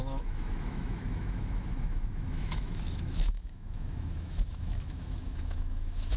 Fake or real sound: fake